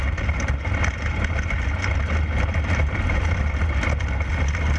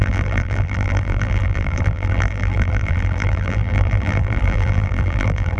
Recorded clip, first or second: first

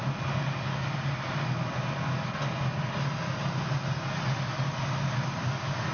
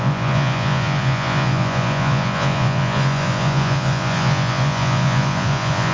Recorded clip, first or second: first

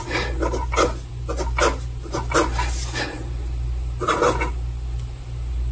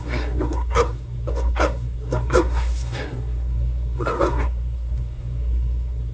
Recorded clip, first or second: first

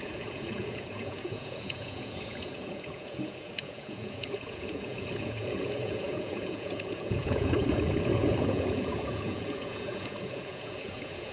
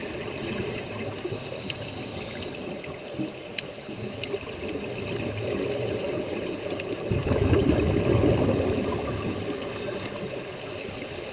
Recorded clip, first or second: second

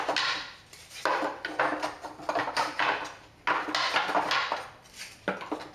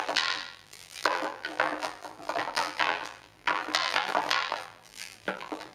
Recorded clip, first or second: first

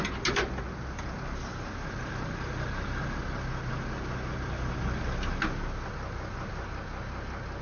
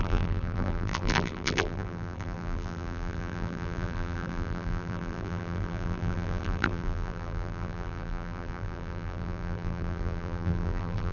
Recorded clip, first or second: first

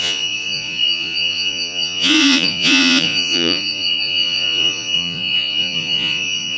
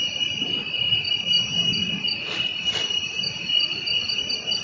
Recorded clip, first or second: second